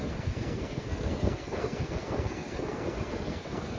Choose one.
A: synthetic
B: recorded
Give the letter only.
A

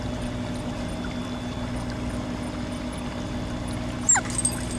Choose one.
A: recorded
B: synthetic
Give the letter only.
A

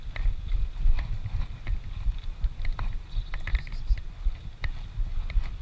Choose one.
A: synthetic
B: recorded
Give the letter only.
B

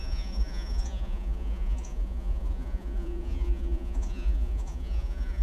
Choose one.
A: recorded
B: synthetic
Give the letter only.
B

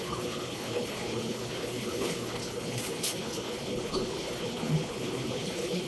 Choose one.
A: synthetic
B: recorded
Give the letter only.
A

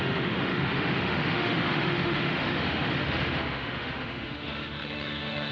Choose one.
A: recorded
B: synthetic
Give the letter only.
B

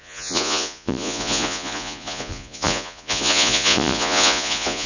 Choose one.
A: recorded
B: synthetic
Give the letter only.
B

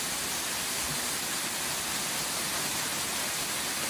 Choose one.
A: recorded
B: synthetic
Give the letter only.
A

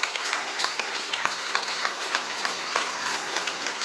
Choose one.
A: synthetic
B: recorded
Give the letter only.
A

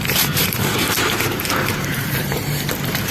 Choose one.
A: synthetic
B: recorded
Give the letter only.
A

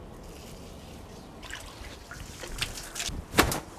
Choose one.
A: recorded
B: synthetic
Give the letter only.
A